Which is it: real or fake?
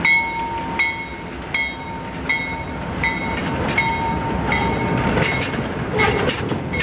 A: real